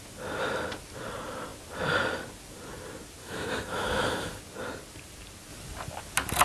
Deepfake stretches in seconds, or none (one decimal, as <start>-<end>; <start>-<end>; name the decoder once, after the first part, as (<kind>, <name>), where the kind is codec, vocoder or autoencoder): 3.2-4.3 (autoencoder, DAC-VAE)